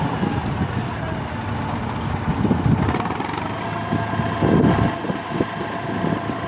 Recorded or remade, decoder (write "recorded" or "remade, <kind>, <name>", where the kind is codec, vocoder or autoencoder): recorded